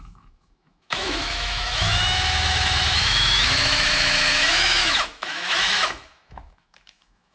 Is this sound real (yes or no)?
no